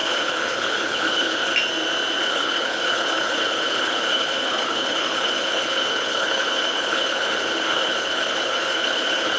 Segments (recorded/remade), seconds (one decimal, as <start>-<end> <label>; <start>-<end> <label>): 0.0-1.5 remade; 1.5-2.2 recorded; 2.2-9.4 remade